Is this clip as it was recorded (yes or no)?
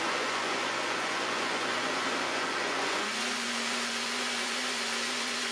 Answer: no